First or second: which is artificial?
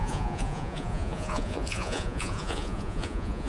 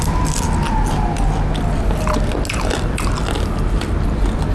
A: first